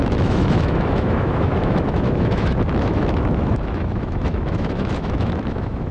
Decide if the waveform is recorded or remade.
remade